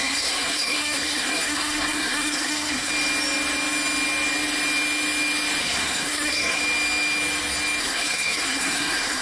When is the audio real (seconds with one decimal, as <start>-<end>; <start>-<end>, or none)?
2.9-5.6; 6.6-7.8

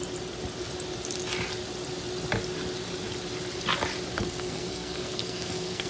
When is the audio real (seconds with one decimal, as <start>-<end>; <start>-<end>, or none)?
0.0-4.1

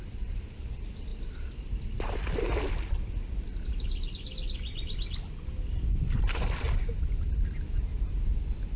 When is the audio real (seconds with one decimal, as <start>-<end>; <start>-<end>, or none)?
0.0-8.8

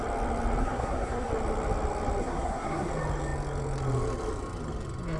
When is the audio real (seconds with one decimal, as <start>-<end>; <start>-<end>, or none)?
0.0-0.6; 1.3-2.2; 2.9-5.2

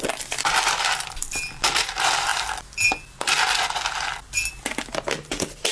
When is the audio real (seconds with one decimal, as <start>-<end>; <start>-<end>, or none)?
0.0-5.7

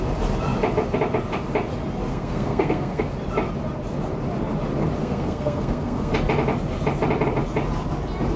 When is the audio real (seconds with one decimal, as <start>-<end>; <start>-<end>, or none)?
0.0-2.1; 3.0-5.0; 6.1-8.4